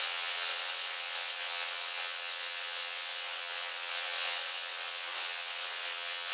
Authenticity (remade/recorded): remade